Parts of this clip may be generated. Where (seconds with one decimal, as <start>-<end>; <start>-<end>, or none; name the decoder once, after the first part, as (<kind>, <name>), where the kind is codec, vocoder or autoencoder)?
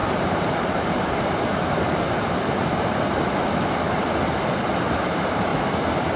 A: 0.0-2.9 (vocoder, BigVGAN v2)